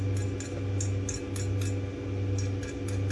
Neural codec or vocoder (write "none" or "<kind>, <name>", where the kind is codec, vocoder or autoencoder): none